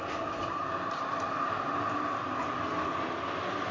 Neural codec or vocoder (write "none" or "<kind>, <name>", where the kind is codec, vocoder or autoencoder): none